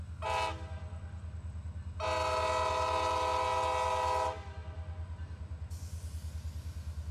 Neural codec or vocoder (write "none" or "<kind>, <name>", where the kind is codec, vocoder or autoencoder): none